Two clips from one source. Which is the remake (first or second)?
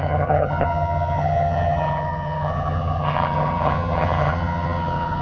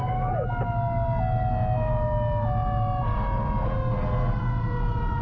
first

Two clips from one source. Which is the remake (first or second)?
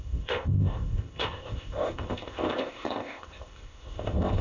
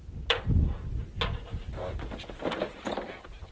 first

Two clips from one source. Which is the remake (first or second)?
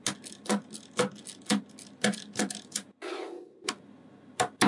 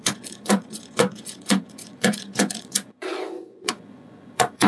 second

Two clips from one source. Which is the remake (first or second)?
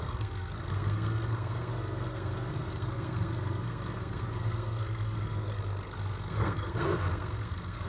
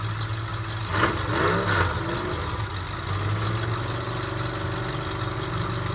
first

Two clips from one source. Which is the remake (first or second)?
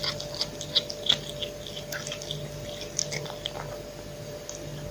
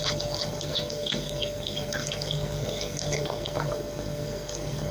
second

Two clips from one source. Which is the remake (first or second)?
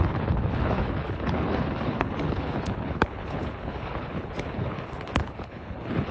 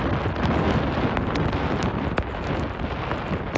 first